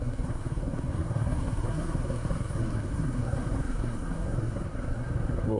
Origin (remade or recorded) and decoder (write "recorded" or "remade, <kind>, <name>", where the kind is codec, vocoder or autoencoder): remade, codec, SNAC